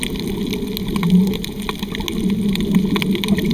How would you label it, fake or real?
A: real